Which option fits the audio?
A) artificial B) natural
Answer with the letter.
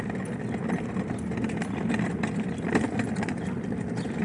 B